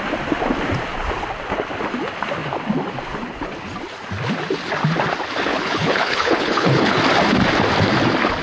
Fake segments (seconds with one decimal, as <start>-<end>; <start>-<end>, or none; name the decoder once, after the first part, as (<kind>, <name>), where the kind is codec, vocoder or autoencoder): 5.5-7.0 (codec, HILCodec)